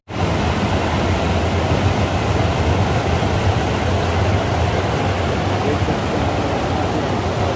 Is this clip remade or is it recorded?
recorded